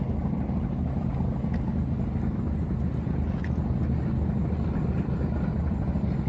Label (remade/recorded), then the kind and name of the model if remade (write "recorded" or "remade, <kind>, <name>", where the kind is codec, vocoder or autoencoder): recorded